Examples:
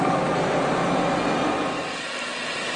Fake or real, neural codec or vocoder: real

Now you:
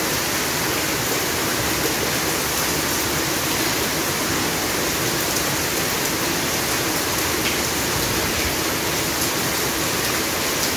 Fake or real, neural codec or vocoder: real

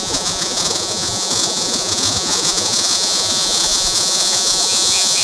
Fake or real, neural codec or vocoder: fake, vocoder, Vocos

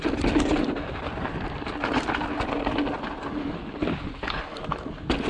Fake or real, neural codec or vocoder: real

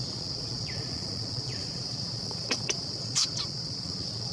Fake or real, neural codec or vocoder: fake, vocoder, Vocos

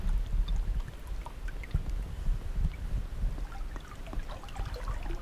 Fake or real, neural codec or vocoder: real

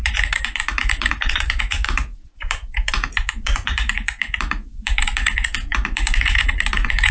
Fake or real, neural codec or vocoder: fake, vocoder, Vocos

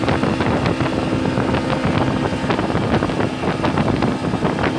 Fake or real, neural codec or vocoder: real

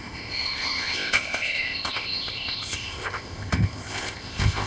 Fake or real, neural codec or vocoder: fake, codec, ZipCodec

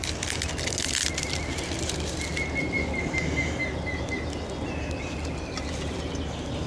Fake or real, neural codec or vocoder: real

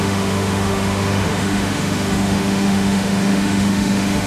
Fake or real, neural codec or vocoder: fake, autoencoder, DAC-VAE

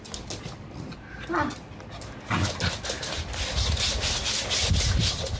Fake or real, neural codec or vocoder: real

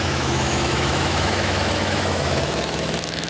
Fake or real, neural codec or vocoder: fake, autoencoder, DAC-VAE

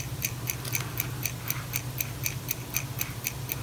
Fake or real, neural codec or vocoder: real